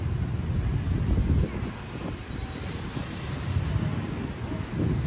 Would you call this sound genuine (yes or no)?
yes